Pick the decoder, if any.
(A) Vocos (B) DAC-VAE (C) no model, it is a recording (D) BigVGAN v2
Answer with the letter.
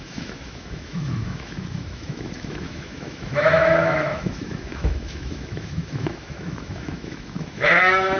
B